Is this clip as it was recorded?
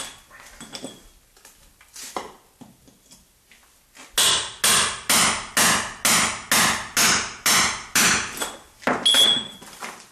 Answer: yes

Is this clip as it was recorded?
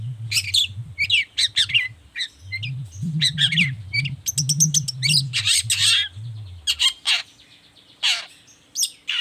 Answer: yes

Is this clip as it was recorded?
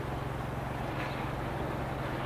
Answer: yes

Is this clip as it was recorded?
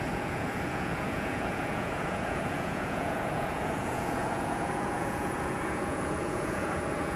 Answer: no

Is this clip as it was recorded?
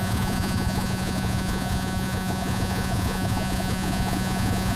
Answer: no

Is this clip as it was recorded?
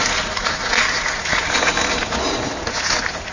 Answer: yes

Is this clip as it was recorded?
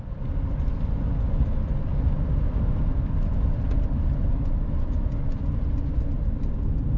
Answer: yes